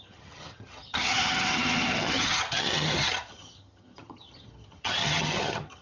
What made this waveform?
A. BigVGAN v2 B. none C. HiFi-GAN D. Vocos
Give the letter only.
C